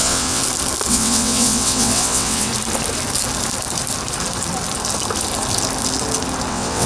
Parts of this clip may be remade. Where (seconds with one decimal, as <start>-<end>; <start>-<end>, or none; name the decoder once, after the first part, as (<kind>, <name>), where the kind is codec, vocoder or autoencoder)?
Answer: 0.0-0.4 (vocoder, WaveNeXt); 0.9-2.5; 6.5-6.9